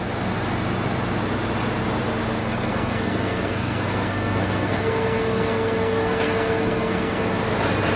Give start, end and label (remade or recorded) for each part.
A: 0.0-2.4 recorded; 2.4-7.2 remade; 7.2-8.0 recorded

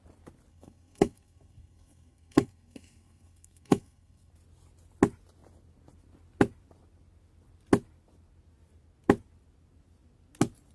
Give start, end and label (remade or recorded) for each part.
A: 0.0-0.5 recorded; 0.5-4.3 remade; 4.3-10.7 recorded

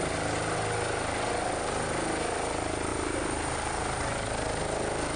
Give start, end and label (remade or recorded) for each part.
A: 0.0-5.2 recorded

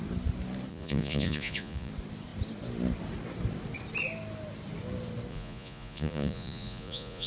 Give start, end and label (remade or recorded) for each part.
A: 0.0-0.7 recorded; 0.7-1.9 remade; 1.9-5.3 recorded; 5.3-7.3 remade

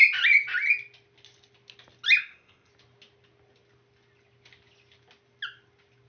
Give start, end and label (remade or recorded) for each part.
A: 0.0-2.2 recorded; 2.2-2.7 remade; 2.7-6.1 recorded

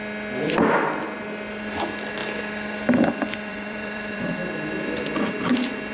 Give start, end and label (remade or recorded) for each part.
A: 0.0-3.5 recorded; 3.5-4.4 remade; 4.4-5.9 recorded

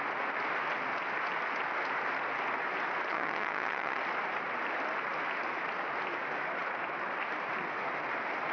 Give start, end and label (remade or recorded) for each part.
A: 0.0-3.1 recorded; 3.1-4.0 remade; 4.0-8.5 recorded

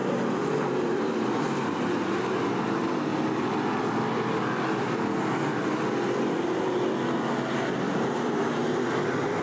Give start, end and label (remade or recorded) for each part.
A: 0.0-3.1 remade; 3.1-7.9 recorded; 7.9-8.6 remade; 8.6-9.4 recorded